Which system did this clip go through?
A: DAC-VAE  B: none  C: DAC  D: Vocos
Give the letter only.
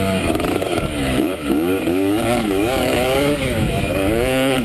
C